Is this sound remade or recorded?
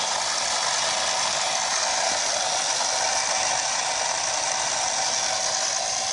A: recorded